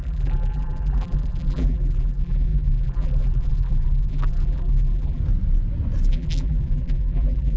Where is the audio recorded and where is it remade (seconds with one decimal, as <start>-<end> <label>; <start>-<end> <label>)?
0.0-5.2 remade; 5.2-6.1 recorded; 6.1-7.6 remade